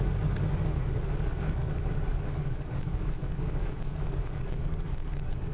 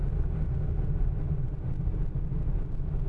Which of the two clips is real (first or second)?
second